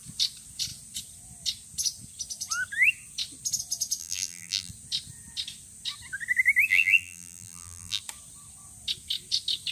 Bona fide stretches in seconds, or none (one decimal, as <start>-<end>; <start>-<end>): 0.0-4.0; 4.7-6.7; 8.0-9.7